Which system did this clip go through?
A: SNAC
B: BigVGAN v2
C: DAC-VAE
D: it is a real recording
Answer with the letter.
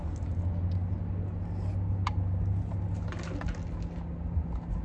D